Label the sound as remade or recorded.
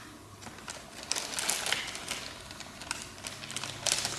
recorded